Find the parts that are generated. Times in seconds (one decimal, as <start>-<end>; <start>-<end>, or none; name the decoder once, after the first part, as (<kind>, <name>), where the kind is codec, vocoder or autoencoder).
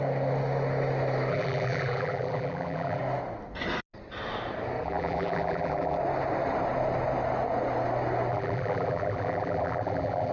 1.3-3.0 (vocoder, BigVGAN v2); 4.8-6.0; 8.3-10.3